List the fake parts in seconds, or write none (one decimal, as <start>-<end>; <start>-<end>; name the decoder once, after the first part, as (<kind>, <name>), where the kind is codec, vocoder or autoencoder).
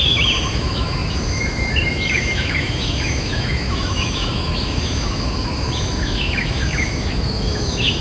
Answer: 0.0-8.0 (autoencoder, DAC-VAE)